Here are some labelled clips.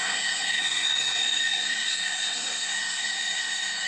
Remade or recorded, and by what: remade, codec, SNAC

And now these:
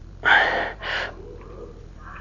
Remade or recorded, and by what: recorded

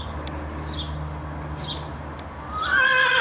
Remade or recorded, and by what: recorded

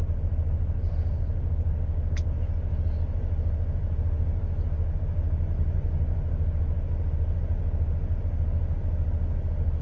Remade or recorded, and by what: recorded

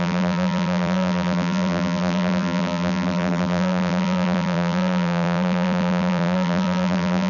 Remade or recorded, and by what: remade, vocoder, BigVGAN v2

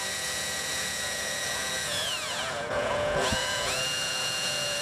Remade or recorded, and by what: remade, vocoder, Vocos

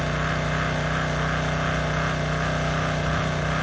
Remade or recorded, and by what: recorded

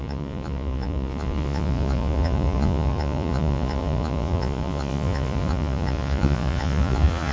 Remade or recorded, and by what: remade, vocoder, Vocos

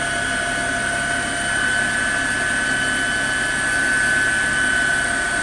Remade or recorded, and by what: recorded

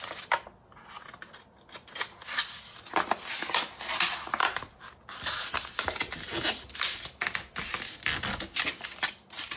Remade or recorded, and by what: recorded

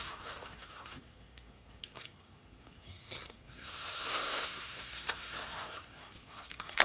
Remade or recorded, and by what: remade, codec, SNAC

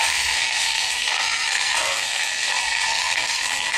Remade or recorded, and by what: remade, codec, SNAC